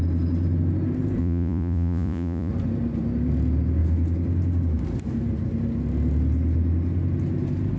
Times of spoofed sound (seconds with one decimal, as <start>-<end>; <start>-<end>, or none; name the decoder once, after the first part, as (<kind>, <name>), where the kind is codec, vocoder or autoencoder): 1.2-2.5 (vocoder, Vocos)